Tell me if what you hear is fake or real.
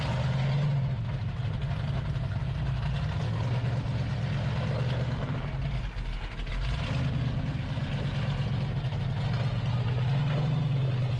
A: real